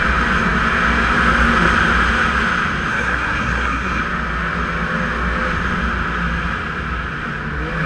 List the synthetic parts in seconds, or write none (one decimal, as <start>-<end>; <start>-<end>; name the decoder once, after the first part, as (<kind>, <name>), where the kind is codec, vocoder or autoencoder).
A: 2.9-4.0 (codec, SNAC)